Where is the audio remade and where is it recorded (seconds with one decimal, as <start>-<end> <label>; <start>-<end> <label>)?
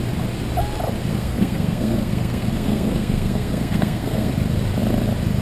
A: 0.0-1.1 recorded; 1.1-4.3 remade; 4.3-5.4 recorded